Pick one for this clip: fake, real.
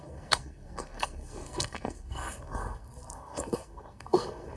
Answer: fake